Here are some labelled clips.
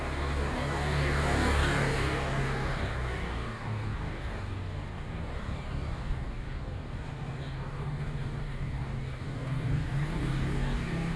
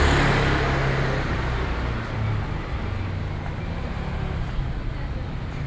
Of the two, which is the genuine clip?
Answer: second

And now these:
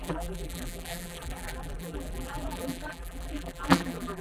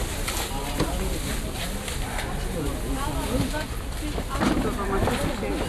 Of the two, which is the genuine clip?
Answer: second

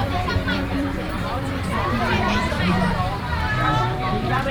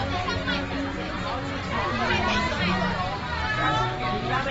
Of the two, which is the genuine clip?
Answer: second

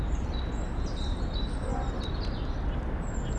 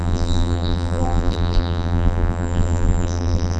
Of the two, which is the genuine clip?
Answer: first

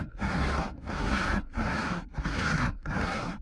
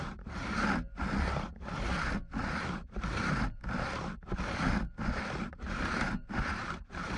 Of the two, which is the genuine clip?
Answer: second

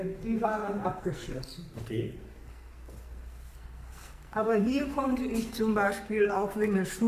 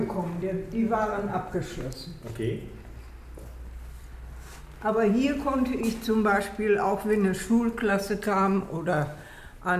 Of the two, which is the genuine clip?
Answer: second